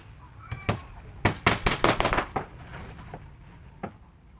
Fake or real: real